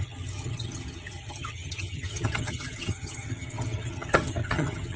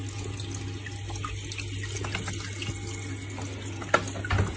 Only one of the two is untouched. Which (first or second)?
second